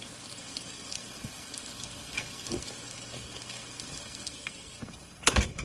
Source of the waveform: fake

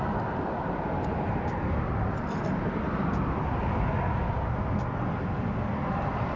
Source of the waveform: real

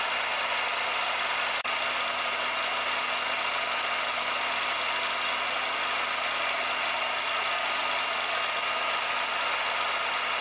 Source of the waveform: real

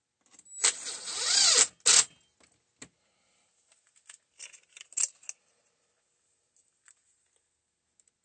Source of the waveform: real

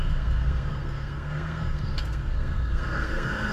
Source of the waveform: fake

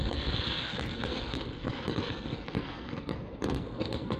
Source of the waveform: fake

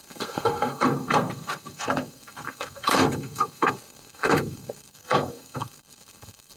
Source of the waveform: fake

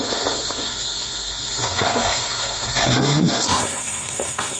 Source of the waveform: fake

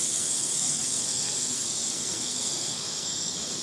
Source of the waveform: fake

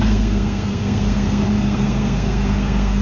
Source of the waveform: fake